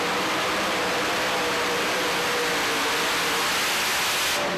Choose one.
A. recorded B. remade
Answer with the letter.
A